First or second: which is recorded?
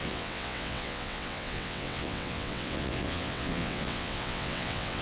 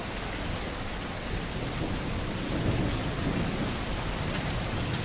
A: second